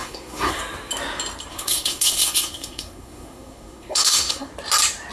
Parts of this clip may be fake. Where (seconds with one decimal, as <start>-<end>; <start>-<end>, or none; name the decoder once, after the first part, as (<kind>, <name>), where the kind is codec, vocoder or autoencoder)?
0.0-0.6 (codec, SNAC); 1.5-4.5

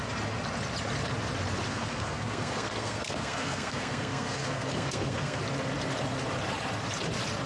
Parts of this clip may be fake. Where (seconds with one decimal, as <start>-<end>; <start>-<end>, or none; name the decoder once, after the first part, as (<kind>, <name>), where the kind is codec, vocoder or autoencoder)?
1.7-5.4 (codec, SNAC)